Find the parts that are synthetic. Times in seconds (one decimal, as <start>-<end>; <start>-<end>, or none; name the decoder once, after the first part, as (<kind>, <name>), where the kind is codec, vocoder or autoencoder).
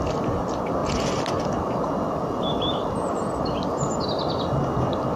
none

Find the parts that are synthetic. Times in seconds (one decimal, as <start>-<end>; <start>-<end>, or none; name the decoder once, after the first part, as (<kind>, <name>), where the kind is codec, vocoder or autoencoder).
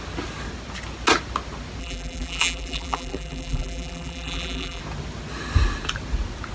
1.8-4.8 (vocoder, BigVGAN v2)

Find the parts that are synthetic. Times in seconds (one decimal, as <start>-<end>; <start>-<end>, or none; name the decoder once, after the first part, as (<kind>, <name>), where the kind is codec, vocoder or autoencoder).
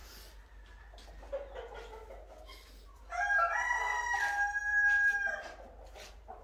4.7-6.4 (vocoder, BigVGAN v2)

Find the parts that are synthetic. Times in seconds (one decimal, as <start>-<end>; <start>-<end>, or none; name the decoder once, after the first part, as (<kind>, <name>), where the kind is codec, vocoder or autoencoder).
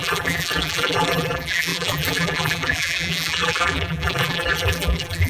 0.0-5.3 (vocoder, BigVGAN v2)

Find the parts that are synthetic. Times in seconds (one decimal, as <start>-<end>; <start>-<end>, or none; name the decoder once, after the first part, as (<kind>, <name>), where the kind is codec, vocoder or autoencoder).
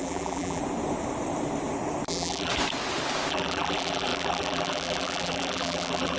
0.0-0.6 (vocoder, BigVGAN v2); 2.1-2.5; 3.3-6.2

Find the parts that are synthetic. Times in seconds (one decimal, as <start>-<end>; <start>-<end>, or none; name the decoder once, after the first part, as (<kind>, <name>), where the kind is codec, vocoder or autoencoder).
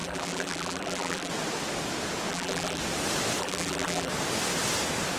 0.0-1.3 (vocoder, BigVGAN v2); 2.3-2.8; 3.4-4.1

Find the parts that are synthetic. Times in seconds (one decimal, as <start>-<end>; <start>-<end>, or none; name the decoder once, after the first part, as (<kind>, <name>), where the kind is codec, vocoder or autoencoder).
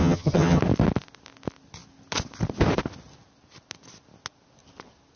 0.0-0.6 (vocoder, HiFi-GAN)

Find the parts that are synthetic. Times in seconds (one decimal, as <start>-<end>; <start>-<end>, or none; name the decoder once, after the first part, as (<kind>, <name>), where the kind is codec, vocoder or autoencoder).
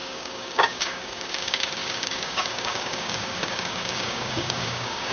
0.0-5.1 (codec, DAC)